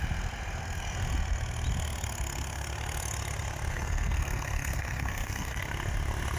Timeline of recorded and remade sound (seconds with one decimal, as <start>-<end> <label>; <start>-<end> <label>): 0.0-3.7 recorded; 3.7-5.6 remade; 5.6-6.4 recorded

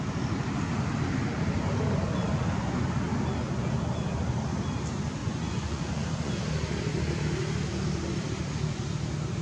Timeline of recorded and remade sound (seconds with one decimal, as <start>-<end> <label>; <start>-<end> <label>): 0.0-5.2 recorded; 5.2-6.3 remade; 6.3-9.4 recorded

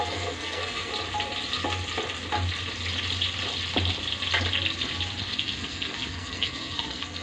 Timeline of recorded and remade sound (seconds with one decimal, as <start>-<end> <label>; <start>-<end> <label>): 0.0-0.9 remade; 0.9-5.2 recorded; 5.2-7.2 remade

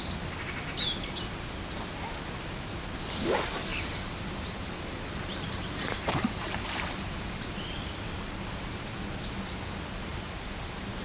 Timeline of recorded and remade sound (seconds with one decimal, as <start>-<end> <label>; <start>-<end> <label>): 0.0-3.7 recorded; 3.7-8.8 remade; 8.8-10.1 recorded; 10.1-10.6 remade; 10.6-11.0 recorded

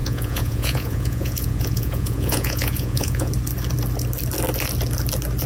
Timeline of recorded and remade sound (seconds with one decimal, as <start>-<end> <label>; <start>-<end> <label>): 0.0-3.3 remade; 3.3-5.5 recorded

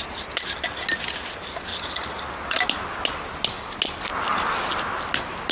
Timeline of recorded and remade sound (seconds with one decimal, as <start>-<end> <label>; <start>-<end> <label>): 0.0-5.5 recorded

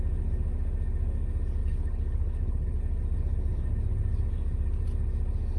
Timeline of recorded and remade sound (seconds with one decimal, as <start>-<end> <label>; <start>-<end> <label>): 0.0-1.6 recorded; 1.6-2.8 remade; 2.8-5.6 recorded

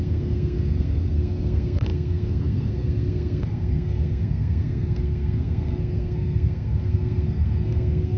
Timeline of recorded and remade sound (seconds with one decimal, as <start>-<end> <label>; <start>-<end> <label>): 0.0-8.2 remade